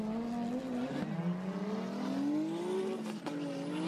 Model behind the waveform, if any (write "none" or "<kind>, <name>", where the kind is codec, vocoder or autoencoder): none